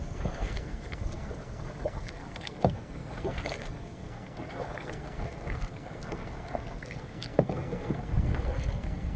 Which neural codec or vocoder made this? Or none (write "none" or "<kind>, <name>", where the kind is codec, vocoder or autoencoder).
codec, SNAC